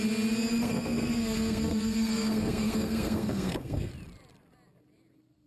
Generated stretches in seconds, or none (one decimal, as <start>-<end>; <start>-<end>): 0.6-3.9